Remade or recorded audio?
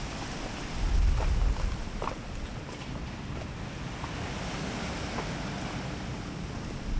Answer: recorded